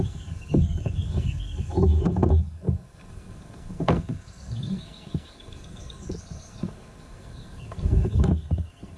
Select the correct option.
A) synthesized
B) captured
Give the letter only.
A